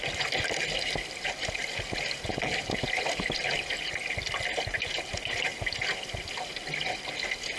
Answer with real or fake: real